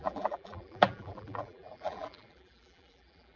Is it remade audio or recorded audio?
remade